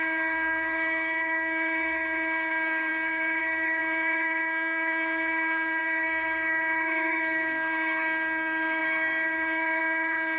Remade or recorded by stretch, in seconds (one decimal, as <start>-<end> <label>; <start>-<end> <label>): 0.0-10.4 remade